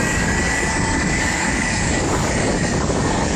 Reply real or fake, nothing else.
fake